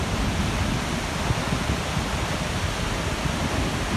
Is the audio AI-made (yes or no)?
no